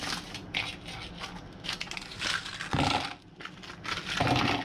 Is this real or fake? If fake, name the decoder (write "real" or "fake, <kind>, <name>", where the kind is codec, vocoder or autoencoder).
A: real